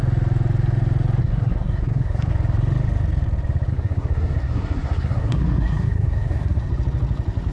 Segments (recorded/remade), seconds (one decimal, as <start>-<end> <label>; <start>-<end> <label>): 0.0-1.2 recorded; 1.2-2.3 remade; 2.3-3.7 recorded; 3.7-6.7 remade; 6.7-7.5 recorded